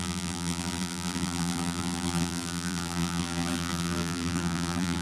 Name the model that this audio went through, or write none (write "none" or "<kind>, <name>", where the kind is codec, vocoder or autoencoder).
vocoder, BigVGAN v2